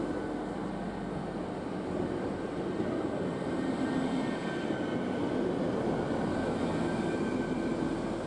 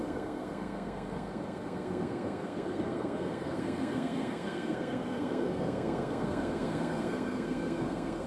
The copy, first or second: second